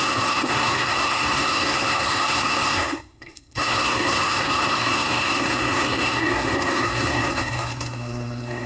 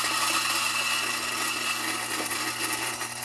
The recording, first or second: second